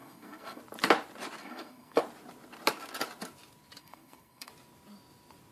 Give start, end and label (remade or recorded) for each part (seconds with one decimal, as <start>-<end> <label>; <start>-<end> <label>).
0.0-0.6 remade; 0.6-1.4 recorded; 1.4-2.0 remade; 2.0-3.8 recorded; 3.8-4.5 remade; 4.5-5.5 recorded

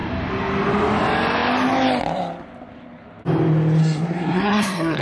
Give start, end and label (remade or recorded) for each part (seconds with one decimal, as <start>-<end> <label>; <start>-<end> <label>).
0.0-3.8 recorded; 3.8-5.0 remade

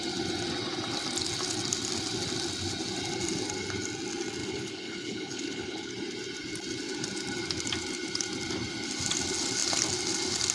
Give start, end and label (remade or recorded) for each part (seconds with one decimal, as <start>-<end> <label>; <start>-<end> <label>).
0.0-4.4 recorded; 4.4-5.9 remade; 5.9-10.5 recorded

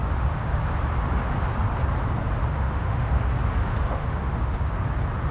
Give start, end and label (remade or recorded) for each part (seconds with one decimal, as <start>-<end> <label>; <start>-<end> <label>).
0.0-0.6 remade; 0.6-2.5 recorded; 2.5-3.2 remade; 3.2-3.6 recorded; 3.6-4.7 remade; 4.7-5.3 recorded

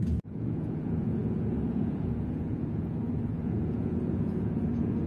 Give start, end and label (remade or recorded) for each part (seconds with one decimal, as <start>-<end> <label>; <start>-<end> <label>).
0.0-5.1 remade